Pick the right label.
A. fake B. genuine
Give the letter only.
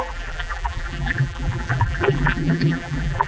A